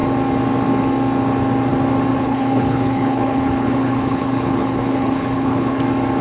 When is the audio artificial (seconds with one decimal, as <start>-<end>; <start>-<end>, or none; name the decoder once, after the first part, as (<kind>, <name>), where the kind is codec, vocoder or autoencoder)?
2.1-5.8 (codec, HILCodec)